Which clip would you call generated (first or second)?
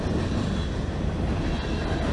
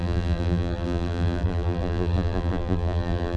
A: second